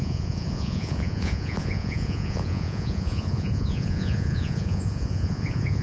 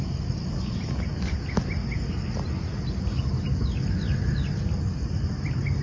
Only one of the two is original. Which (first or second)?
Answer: second